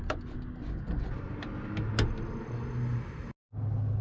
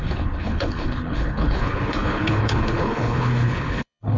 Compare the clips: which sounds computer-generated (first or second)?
second